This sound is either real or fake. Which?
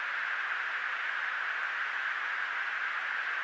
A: real